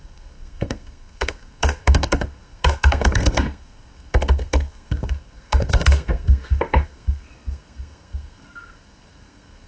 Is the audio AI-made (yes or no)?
yes